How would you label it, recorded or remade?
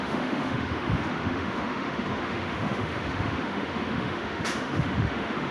remade